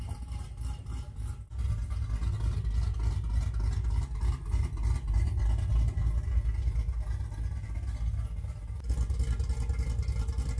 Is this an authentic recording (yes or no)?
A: yes